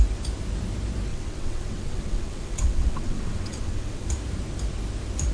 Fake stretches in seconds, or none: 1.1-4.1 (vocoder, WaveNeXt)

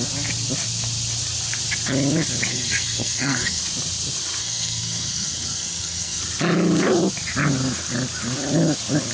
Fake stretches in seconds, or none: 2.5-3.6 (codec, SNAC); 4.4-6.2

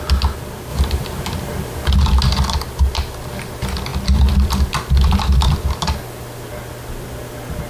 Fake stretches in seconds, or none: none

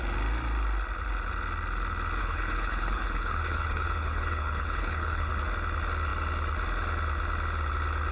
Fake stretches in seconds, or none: 2.2-5.3 (codec, HILCodec)